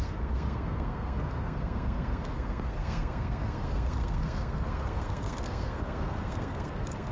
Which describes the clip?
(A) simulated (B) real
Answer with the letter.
A